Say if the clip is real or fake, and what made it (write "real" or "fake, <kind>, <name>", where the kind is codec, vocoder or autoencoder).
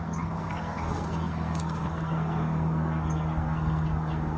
fake, codec, SNAC